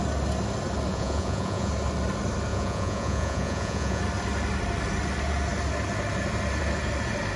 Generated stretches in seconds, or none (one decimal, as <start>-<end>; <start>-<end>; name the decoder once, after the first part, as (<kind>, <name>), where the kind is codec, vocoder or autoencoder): 0.9-1.7 (vocoder, Vocos); 2.5-4.0